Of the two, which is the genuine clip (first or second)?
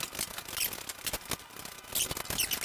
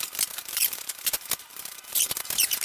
first